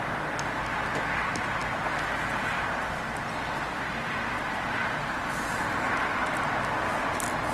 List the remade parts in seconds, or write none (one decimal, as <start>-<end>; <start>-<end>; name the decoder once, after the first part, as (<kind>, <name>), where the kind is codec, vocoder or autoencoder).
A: 5.0-5.9 (vocoder, BigVGAN v2)